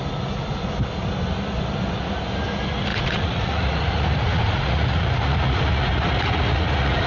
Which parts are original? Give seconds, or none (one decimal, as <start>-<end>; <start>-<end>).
0.0-2.9